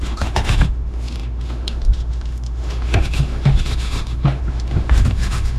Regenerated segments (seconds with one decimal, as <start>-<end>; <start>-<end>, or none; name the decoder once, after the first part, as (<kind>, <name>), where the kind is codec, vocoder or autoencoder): 0.0-5.6 (autoencoder, DAC-VAE)